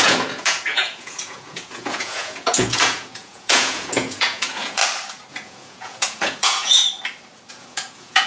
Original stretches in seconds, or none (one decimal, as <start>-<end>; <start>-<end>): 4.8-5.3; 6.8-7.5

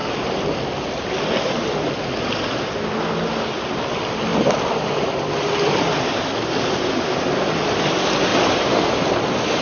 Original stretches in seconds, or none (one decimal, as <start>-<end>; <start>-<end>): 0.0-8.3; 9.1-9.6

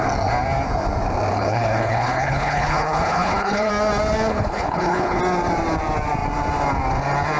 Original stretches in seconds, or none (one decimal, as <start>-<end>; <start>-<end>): 0.0-1.3; 3.7-4.3; 5.2-7.4